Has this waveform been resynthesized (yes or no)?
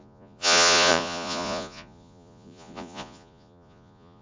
yes